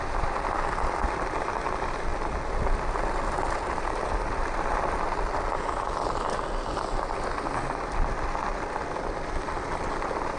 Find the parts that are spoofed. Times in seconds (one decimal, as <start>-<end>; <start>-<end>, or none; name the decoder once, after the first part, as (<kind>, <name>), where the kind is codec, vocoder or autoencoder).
none